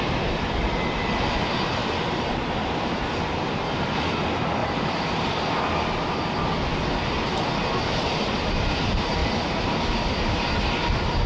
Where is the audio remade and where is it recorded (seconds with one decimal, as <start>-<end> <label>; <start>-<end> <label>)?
0.0-1.8 recorded; 1.8-3.5 remade; 3.5-4.6 recorded; 4.6-5.3 remade; 5.3-11.3 recorded